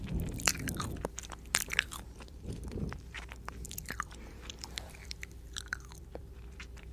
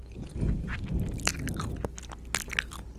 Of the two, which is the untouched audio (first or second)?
second